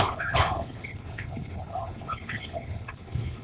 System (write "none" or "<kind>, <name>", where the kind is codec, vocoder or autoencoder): codec, HILCodec